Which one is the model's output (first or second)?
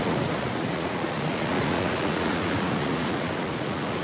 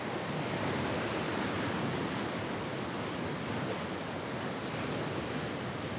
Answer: first